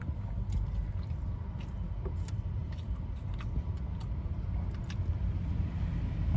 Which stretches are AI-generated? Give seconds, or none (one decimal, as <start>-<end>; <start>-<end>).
2.6-3.3